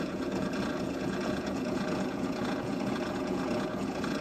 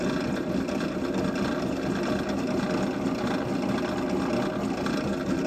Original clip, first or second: second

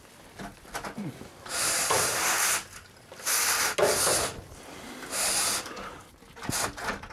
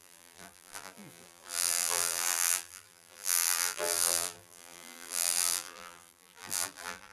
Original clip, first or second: first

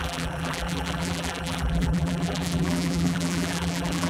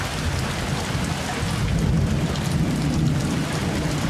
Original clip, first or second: second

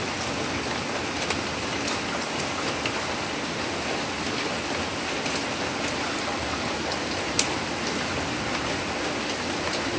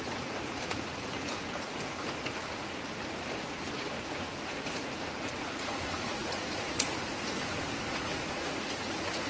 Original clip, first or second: first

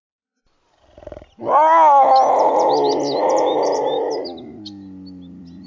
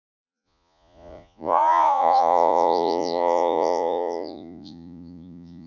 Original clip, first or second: first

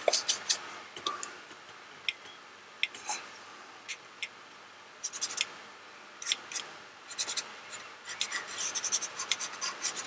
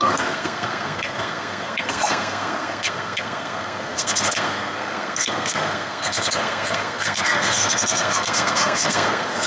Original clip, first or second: first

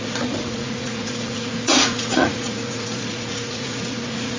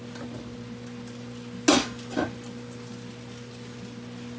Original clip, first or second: second